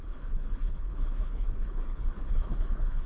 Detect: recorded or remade remade